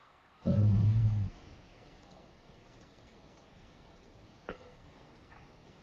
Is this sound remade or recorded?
remade